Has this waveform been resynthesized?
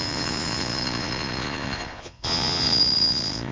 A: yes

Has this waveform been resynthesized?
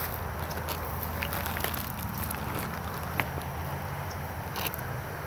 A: no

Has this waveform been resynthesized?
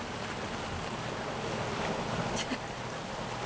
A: no